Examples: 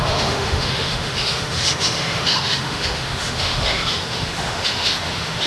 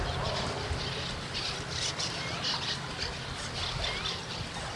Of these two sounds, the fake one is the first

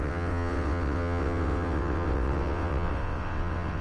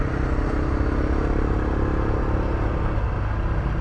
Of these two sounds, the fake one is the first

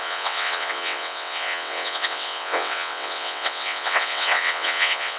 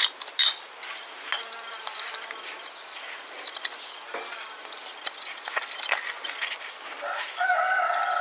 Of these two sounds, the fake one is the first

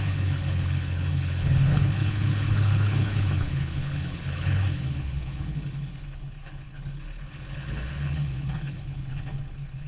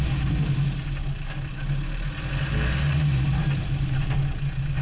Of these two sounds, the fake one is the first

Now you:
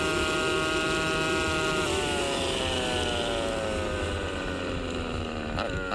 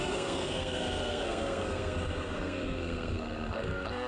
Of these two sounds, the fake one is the second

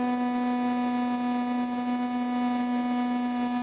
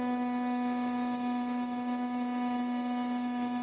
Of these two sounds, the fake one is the second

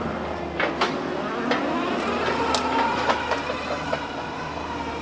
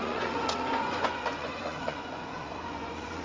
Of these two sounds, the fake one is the second